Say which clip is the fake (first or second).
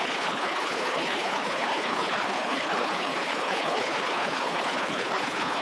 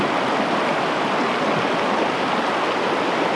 first